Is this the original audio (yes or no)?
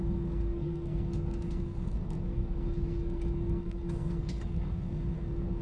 no